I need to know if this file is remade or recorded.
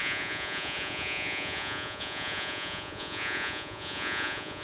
remade